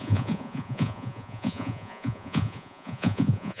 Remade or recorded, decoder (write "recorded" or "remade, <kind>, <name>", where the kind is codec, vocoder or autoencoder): remade, vocoder, Vocos